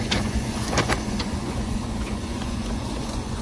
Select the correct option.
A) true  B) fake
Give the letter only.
B